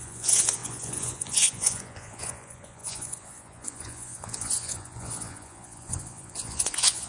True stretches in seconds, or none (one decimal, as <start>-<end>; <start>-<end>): none